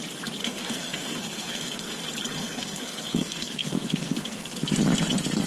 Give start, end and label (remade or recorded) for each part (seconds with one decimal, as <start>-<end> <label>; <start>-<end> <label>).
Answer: 0.0-0.4 recorded; 0.4-2.0 remade; 2.0-2.4 recorded; 2.4-4.5 remade; 4.5-5.5 recorded